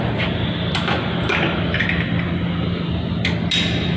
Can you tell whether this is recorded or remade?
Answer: recorded